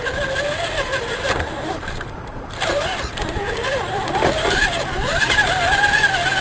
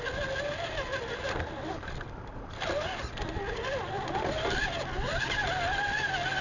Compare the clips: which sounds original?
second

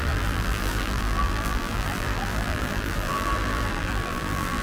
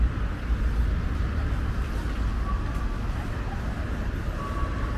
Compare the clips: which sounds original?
second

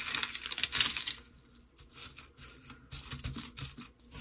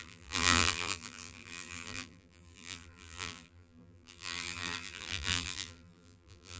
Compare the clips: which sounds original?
first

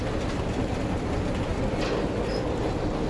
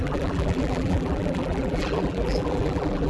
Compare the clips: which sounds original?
first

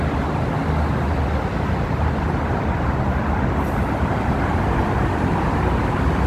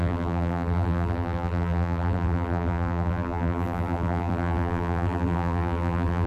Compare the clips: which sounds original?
first